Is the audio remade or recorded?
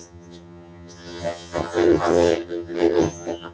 remade